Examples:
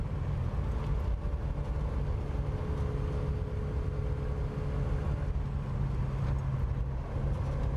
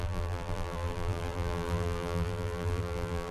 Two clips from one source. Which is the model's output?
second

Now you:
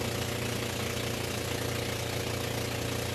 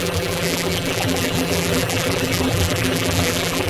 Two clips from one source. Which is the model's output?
second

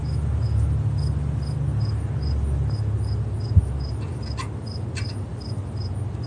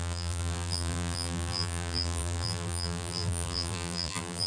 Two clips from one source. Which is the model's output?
second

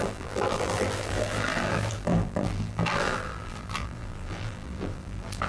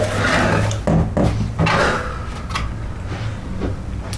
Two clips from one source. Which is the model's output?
first